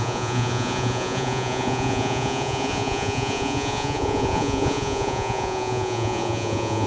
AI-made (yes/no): yes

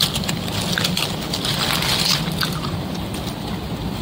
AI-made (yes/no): no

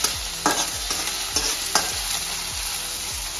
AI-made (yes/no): no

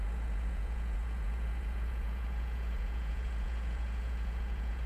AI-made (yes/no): yes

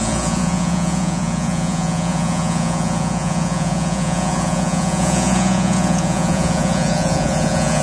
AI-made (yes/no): yes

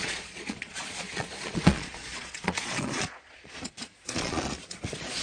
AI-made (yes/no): yes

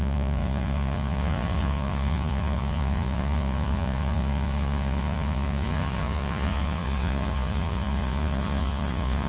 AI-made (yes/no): yes